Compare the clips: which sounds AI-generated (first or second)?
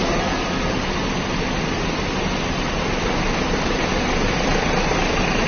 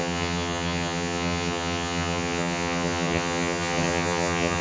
second